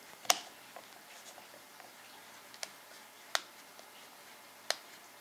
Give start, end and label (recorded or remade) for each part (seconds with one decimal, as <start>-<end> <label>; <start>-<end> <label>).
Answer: 0.0-5.2 recorded